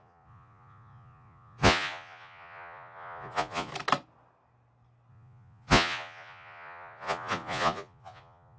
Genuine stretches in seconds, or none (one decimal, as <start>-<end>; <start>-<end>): 3.7-5.1